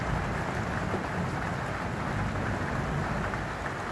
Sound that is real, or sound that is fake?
real